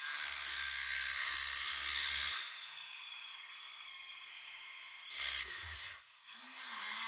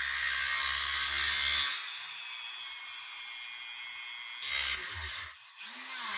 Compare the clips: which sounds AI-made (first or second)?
first